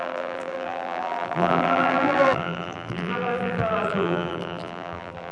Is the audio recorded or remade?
remade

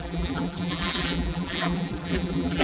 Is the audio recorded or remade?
remade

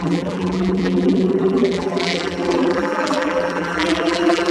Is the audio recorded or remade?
remade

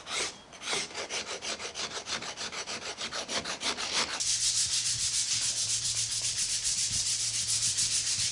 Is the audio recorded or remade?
remade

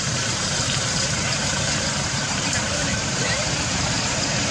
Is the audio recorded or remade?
remade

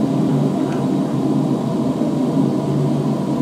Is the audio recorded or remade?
recorded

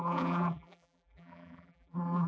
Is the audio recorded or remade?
remade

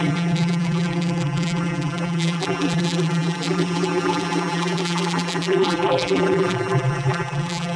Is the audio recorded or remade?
remade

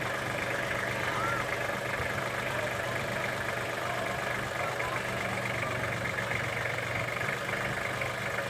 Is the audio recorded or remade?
remade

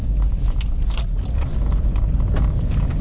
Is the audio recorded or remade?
recorded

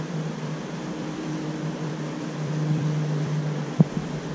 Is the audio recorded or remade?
remade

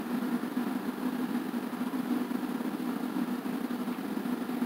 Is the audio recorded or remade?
recorded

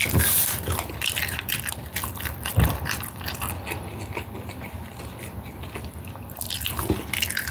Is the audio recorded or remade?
recorded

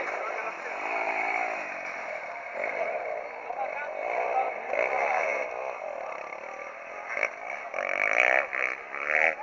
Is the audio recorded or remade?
remade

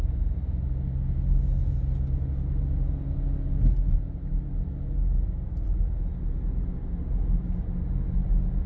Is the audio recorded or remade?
recorded